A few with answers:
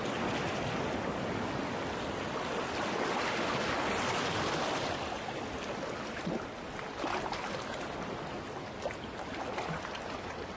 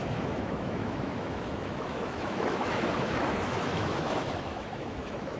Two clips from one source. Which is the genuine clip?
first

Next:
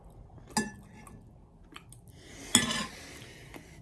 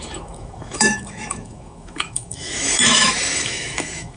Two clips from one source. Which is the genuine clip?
first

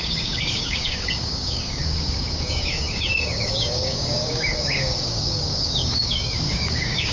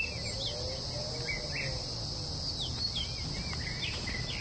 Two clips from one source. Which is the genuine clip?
second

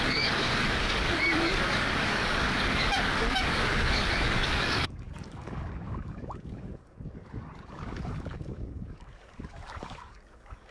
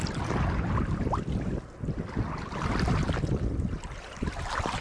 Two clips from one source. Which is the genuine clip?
second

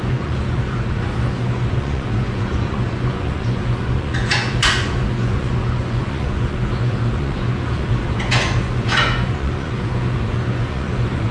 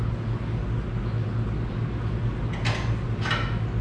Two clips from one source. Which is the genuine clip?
second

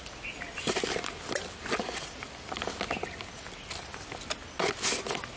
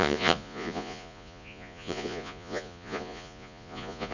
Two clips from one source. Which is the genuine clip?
first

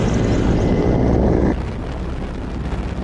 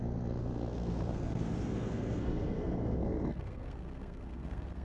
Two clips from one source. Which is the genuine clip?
first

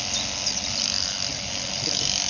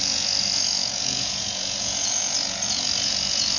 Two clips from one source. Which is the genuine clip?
first